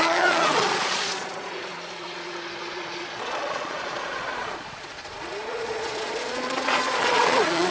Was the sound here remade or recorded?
remade